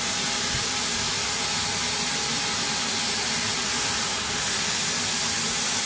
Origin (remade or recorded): recorded